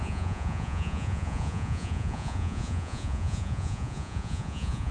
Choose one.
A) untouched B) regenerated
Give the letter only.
B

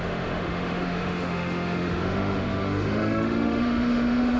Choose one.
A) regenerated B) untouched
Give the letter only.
A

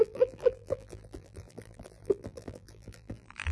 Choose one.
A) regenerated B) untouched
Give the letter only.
A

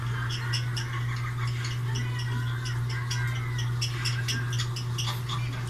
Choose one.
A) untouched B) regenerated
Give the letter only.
A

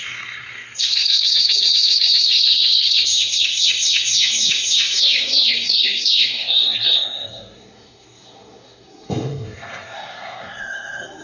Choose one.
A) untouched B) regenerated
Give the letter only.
B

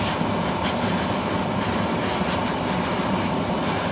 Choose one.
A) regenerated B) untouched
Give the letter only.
B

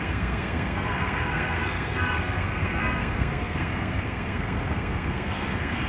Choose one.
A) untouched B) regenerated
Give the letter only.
B